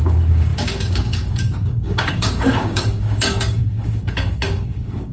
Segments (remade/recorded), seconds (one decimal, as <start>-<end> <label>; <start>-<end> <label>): 0.0-5.1 remade